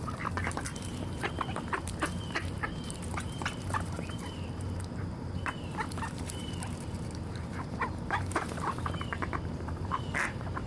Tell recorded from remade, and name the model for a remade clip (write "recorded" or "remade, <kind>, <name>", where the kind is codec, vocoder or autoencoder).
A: remade, vocoder, BigVGAN v2